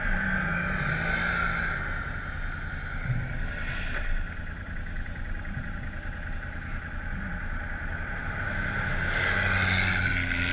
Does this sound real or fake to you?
real